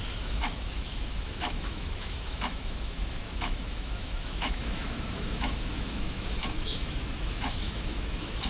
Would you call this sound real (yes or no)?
no